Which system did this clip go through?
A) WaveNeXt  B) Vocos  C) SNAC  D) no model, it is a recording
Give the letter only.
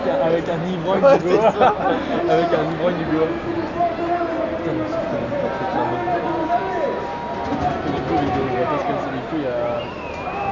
D